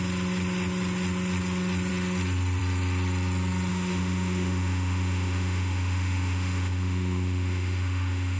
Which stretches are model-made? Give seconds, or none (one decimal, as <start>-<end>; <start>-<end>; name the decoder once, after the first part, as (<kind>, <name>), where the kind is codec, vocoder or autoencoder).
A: 3.7-8.4 (autoencoder, DAC-VAE)